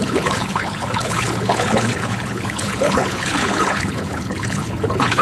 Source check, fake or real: fake